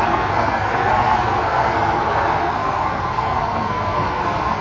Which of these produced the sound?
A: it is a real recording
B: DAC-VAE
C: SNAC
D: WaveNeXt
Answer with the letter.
C